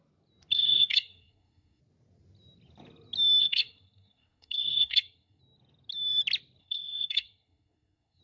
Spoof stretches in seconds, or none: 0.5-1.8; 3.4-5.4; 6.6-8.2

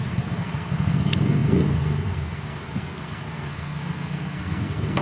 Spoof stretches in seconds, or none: 0.0-5.0